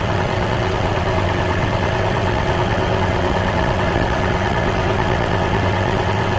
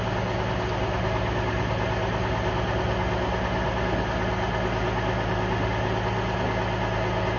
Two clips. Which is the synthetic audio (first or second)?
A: first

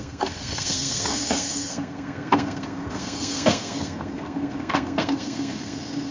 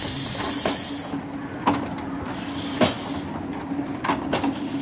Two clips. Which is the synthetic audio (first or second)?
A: first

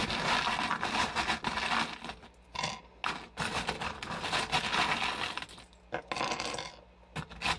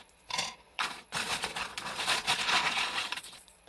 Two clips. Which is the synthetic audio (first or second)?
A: second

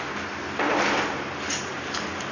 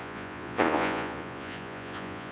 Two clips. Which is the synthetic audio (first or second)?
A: second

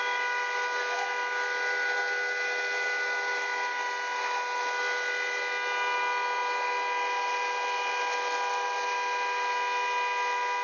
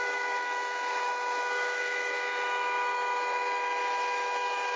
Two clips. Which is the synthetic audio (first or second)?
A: second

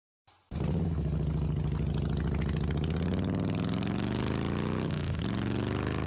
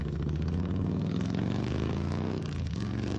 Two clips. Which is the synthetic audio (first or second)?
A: second